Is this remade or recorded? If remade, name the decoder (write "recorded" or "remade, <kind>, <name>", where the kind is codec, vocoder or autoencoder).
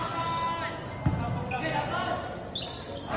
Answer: recorded